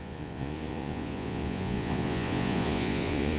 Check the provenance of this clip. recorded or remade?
remade